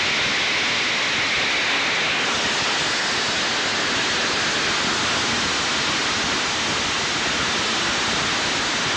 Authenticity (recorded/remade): recorded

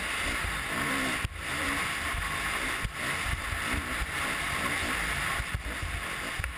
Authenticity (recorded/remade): recorded